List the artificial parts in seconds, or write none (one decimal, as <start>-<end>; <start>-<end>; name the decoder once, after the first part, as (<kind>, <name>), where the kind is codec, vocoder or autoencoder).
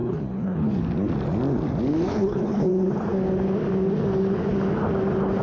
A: 0.0-0.8 (codec, HILCodec); 2.1-2.7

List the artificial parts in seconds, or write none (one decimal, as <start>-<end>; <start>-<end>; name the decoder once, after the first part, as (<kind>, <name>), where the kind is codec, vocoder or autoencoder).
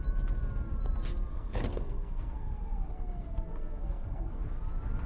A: 1.3-4.4 (codec, SNAC)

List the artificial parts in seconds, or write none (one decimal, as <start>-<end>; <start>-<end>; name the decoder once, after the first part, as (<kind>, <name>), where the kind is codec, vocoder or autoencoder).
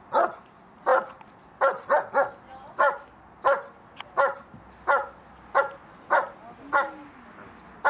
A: none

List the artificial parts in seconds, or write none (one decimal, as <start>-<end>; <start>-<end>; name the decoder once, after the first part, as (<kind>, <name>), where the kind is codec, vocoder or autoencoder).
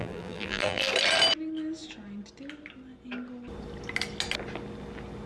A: 0.0-0.9 (vocoder, BigVGAN v2)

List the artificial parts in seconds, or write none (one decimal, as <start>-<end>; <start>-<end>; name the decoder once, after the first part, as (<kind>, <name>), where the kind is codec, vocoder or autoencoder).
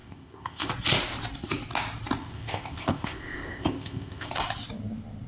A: 0.0-0.7 (codec, ZipCodec); 2.2-4.3